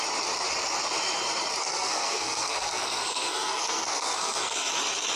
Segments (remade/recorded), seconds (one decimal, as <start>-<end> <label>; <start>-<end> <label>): 0.0-1.6 recorded; 1.6-4.7 remade; 4.7-5.2 recorded